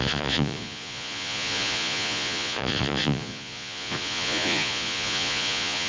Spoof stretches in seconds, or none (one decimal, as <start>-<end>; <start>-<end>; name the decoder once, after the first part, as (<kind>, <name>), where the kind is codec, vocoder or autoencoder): 0.0-5.9 (vocoder, Vocos)